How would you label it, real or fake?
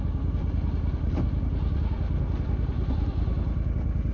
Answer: real